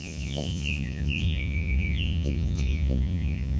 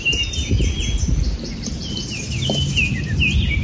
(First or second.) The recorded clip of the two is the second